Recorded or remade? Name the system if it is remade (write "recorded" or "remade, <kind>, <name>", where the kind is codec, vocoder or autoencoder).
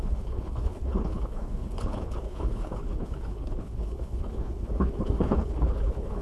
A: remade, codec, HILCodec